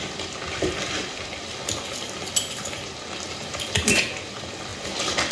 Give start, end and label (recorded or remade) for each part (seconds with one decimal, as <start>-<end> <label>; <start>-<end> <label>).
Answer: 0.0-5.3 recorded